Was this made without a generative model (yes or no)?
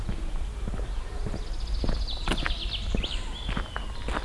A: yes